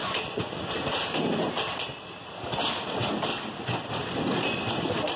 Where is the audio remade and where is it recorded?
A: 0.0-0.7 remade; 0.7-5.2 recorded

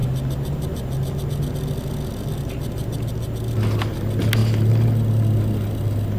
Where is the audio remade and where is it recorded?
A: 0.0-6.2 recorded